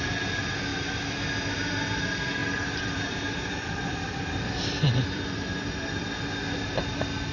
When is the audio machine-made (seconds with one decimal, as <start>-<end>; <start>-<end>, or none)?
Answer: 2.4-5.5